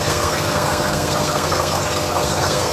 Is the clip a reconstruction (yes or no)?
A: yes